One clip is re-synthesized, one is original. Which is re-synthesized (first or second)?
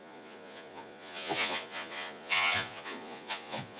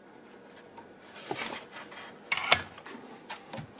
first